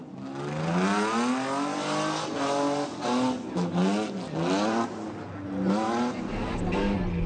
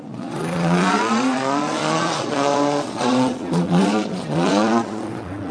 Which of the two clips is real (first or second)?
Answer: first